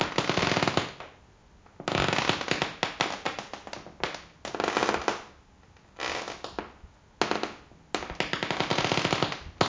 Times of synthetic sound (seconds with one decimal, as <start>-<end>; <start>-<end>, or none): none